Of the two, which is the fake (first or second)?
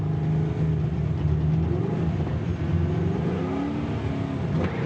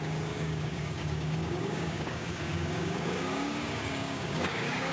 second